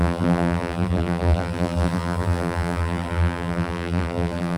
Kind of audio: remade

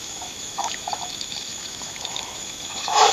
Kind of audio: remade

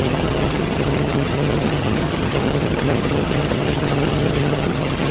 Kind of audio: remade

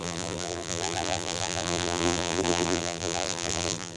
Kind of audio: remade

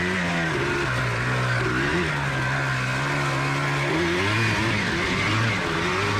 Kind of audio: recorded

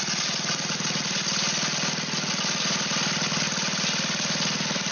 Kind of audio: recorded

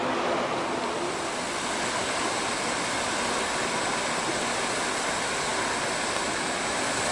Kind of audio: recorded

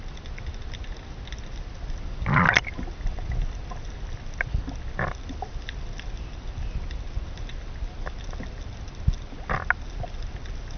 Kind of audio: recorded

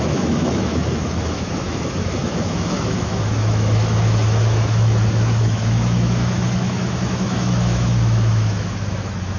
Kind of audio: remade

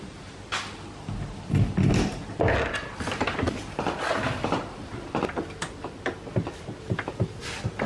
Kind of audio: recorded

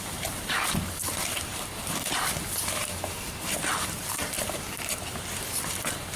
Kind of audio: remade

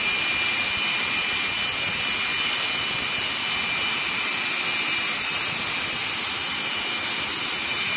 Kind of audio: remade